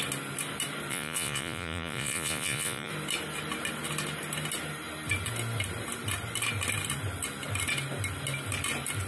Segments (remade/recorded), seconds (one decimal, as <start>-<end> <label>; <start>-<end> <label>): 0.0-0.9 recorded; 0.9-2.9 remade; 2.9-9.1 recorded